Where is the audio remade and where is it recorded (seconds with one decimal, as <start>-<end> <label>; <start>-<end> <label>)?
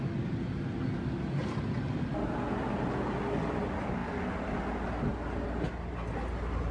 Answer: 0.0-6.7 recorded